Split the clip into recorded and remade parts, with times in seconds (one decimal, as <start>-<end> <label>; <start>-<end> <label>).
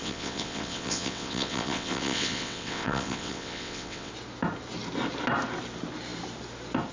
0.0-4.1 remade; 4.1-6.9 recorded